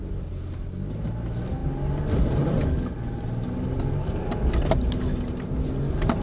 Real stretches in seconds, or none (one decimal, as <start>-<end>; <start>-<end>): 0.0-6.2